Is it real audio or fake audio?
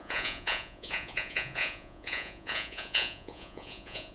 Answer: fake